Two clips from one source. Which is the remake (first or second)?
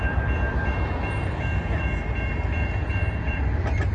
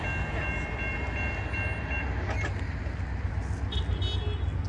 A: first